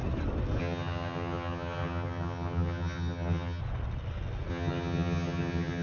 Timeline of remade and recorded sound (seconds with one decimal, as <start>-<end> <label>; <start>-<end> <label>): 0.0-0.6 recorded; 0.6-3.6 remade; 3.6-4.5 recorded; 4.5-5.8 remade